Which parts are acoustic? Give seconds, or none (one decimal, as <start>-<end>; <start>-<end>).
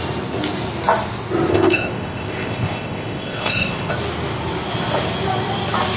0.0-1.5; 3.9-6.0